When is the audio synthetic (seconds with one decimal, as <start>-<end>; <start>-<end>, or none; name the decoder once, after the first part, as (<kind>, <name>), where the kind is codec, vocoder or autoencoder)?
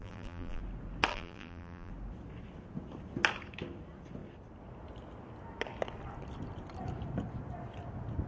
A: 0.0-0.6 (vocoder, BigVGAN v2); 1.1-1.9